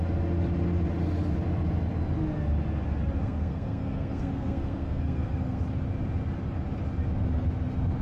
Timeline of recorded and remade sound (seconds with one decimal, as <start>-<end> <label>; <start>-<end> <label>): 0.0-3.2 recorded; 3.2-5.6 remade; 5.6-8.0 recorded